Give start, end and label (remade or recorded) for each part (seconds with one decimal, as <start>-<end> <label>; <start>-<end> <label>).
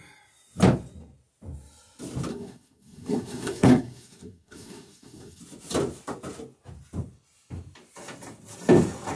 0.0-2.3 recorded; 2.3-5.4 remade; 5.4-9.2 recorded